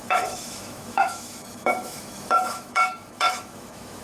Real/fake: fake